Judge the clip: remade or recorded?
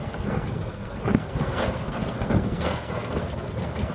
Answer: remade